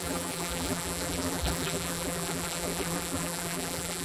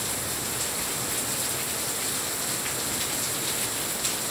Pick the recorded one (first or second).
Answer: second